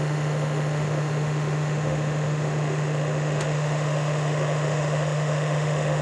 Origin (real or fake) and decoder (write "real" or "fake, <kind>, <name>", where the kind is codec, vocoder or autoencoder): fake, autoencoder, DAC-VAE